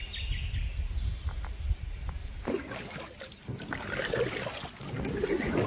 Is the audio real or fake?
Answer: real